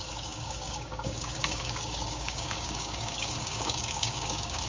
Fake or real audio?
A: fake